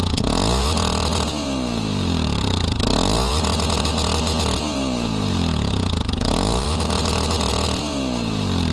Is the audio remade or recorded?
remade